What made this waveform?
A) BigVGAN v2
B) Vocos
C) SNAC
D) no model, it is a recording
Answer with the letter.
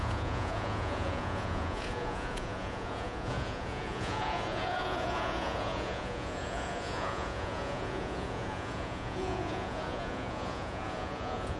B